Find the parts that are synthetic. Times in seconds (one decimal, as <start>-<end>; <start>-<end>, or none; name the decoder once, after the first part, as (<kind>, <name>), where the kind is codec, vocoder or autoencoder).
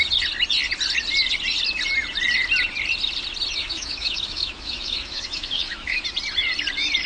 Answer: 3.6-6.0 (autoencoder, DAC-VAE)